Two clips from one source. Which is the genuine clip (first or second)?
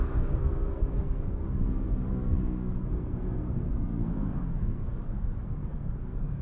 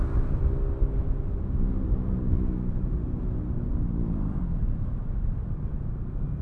second